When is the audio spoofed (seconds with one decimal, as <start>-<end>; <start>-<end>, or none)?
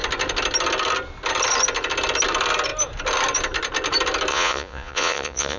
4.3-5.6